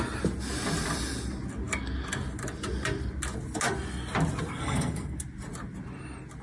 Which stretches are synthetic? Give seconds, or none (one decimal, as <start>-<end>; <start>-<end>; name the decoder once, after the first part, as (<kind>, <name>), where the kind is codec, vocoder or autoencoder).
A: 4.5-5.2 (codec, SNAC)

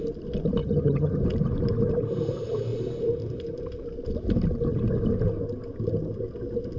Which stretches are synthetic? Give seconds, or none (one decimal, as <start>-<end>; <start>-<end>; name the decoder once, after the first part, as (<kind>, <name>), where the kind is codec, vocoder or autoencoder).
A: 0.6-1.2 (vocoder, HiFi-GAN)

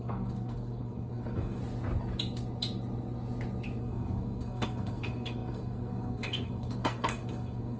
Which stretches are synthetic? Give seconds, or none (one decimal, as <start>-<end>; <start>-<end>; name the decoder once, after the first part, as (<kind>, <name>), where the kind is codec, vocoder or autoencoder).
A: 0.0-1.6 (codec, SNAC); 3.8-7.8

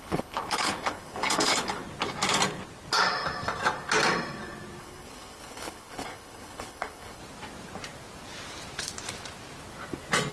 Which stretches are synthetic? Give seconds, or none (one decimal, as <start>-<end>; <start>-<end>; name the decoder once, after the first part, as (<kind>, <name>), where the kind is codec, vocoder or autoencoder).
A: 0.0-1.8 (codec, HILCodec); 4.8-7.2

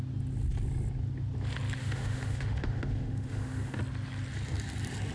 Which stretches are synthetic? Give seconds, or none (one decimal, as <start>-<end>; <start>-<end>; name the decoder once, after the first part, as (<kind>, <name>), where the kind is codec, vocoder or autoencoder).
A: 1.8-3.8 (autoencoder, DAC-VAE)